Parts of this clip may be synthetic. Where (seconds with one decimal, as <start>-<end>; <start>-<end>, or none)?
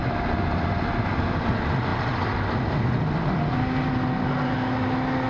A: none